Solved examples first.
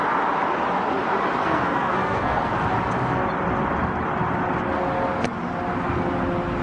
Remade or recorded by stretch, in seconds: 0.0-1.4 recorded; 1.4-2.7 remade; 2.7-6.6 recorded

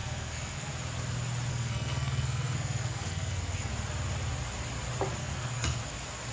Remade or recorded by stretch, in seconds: 0.0-0.7 remade; 0.7-1.5 recorded; 1.5-3.7 remade; 3.7-5.2 recorded; 5.2-5.8 remade; 5.8-6.3 recorded

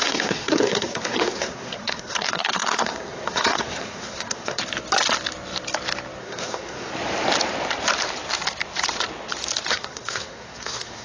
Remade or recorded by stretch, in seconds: 0.0-4.6 remade; 4.6-6.2 recorded; 6.2-6.9 remade; 6.9-9.7 recorded; 9.7-11.0 remade

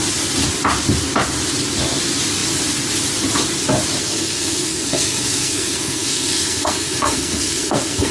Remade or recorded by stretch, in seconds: 0.0-4.0 recorded; 4.0-8.1 remade

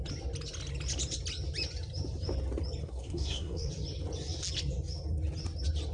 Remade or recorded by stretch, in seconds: 0.0-2.8 recorded; 2.8-3.7 remade; 3.7-5.9 recorded

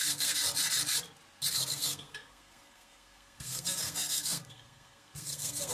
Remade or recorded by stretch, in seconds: 0.0-0.4 remade; 0.4-1.5 recorded; 1.5-5.7 remade

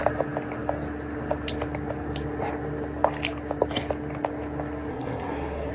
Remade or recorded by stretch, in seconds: 0.0-4.9 recorded; 4.9-5.7 remade